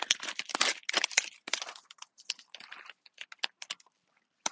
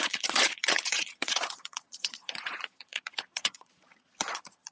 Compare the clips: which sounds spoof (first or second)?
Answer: second